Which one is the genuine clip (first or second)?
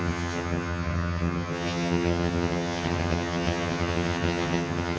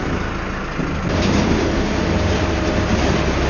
second